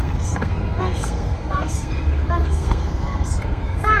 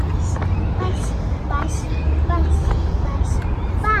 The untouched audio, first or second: second